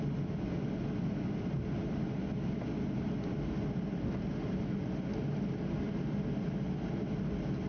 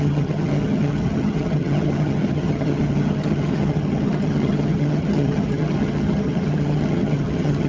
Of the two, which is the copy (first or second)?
second